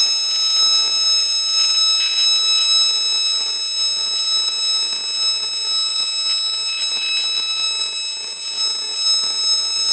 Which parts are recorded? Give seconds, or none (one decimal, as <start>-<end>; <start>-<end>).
0.0-9.9